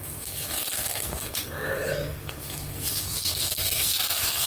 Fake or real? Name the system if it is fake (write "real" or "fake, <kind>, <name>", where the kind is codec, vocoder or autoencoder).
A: fake, codec, SNAC